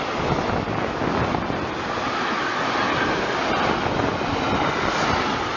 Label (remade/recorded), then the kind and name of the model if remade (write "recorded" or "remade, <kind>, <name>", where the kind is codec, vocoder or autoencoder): recorded